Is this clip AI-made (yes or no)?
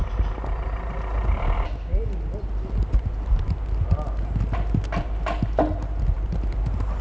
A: no